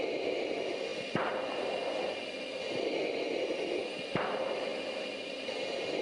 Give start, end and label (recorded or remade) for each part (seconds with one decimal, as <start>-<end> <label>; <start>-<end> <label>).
0.0-6.0 recorded

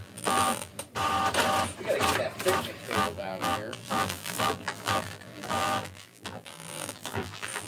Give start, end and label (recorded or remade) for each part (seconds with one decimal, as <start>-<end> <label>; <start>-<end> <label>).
0.0-0.7 remade; 0.7-2.8 recorded; 2.8-7.7 remade

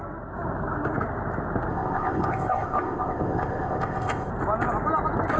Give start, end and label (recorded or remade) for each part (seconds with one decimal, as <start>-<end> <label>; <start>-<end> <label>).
0.0-1.7 recorded; 1.7-4.3 remade; 4.3-5.4 recorded

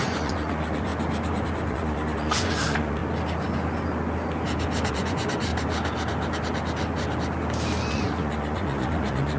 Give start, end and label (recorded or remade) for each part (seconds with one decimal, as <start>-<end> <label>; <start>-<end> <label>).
0.0-0.9 remade; 0.9-1.7 recorded; 1.7-3.0 remade; 3.0-4.9 recorded; 4.9-5.5 remade; 5.5-7.9 recorded; 7.9-9.4 remade

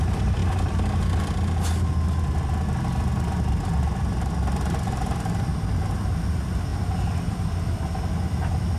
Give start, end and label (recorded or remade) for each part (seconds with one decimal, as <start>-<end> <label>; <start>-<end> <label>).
0.0-0.4 remade; 0.4-3.8 recorded; 3.8-5.5 remade; 5.5-6.2 recorded; 6.2-6.7 remade; 6.7-7.3 recorded; 7.3-8.8 remade